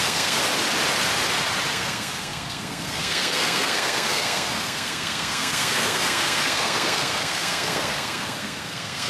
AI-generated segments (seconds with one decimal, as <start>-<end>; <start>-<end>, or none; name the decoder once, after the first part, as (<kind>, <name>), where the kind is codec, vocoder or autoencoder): 0.0-0.4 (codec, SNAC); 1.7-9.1